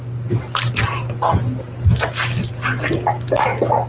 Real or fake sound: real